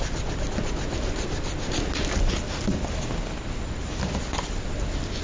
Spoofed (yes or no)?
no